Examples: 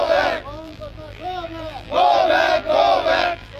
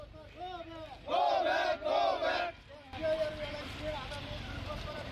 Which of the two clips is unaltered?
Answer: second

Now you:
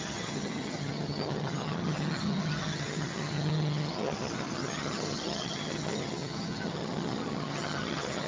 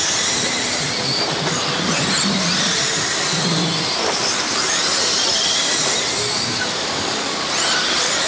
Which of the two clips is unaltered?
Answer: second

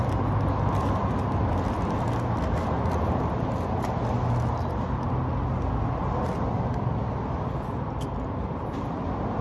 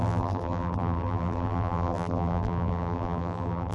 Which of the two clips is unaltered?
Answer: first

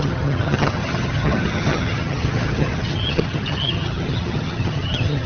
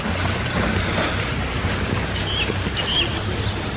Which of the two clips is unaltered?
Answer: second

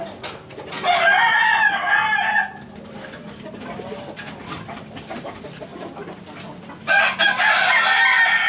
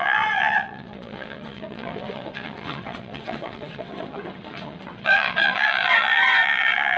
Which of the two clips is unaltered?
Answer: first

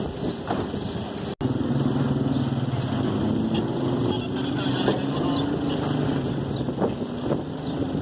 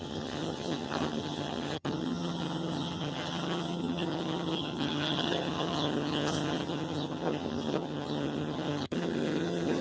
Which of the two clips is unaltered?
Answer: first